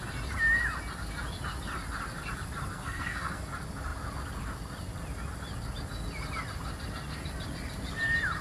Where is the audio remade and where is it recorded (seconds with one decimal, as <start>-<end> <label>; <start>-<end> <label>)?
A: 0.0-2.7 recorded; 2.7-3.4 remade; 3.4-8.4 recorded